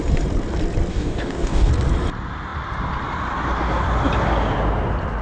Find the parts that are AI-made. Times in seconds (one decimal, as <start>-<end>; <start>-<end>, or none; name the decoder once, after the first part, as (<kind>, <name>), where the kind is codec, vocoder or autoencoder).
0.9-1.7 (codec, DAC)